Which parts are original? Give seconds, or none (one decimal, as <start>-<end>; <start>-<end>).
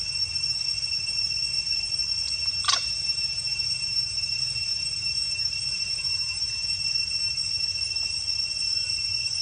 0.0-2.4; 6.8-9.4